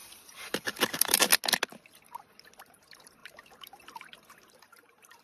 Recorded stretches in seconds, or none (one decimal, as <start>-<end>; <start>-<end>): 1.3-2.6